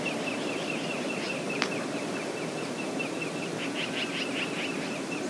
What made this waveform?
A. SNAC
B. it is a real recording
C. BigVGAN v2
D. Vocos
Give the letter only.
B